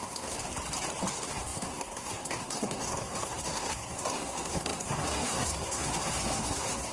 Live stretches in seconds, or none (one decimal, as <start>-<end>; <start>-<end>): 0.5-1.1